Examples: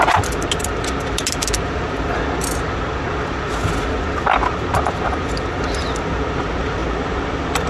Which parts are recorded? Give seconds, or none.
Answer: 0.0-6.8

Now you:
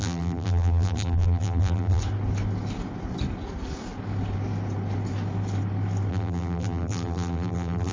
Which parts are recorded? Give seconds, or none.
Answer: 2.0-6.1

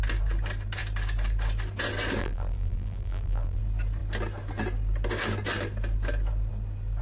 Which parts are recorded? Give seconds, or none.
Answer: 0.0-2.2; 3.6-7.0

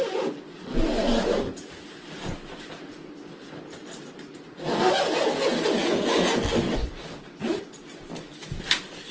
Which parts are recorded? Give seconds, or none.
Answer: 0.0-6.8; 8.5-9.1

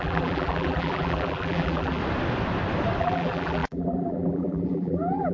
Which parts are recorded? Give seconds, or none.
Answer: 2.0-3.0

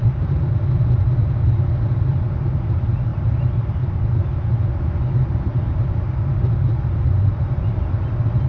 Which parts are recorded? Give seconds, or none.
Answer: 0.6-8.5

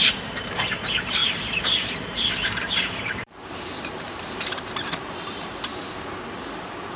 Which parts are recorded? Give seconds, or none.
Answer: 5.7-7.0

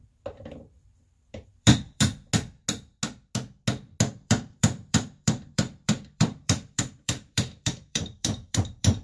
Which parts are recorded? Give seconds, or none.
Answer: 2.3-4.1